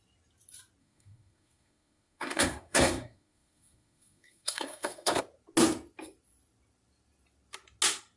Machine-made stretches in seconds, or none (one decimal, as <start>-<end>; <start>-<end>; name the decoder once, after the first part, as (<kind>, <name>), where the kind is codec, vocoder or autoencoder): 0.8-5.2 (codec, SNAC)